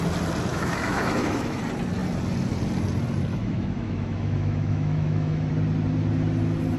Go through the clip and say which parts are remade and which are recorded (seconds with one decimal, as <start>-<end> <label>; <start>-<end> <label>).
0.0-0.5 recorded; 0.5-1.6 remade; 1.6-3.3 recorded; 3.3-5.5 remade; 5.5-6.8 recorded